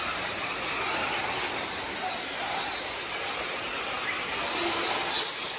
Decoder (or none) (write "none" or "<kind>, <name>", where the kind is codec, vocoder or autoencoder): none